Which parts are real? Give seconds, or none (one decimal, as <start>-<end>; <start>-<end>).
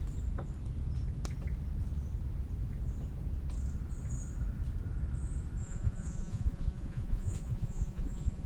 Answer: 0.0-5.6